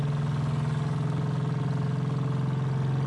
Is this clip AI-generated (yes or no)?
no